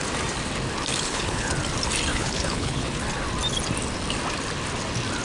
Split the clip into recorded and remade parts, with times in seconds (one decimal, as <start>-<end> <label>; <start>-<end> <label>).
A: 0.0-0.9 recorded; 0.9-1.5 remade; 1.5-2.1 recorded; 2.1-3.0 remade; 3.0-5.2 recorded